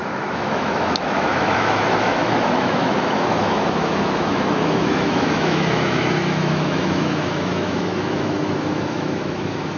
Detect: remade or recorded remade